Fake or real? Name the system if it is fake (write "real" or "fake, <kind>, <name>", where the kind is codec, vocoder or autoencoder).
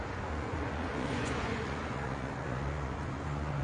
fake, vocoder, Vocos